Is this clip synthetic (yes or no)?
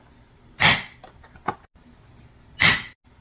no